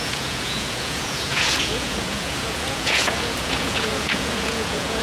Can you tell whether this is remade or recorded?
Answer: remade